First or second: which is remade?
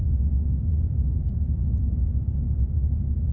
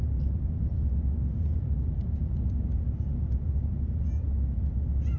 first